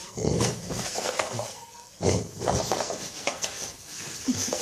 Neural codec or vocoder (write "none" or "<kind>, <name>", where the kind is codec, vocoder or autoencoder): codec, SNAC